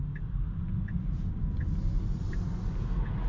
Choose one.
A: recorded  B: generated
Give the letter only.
A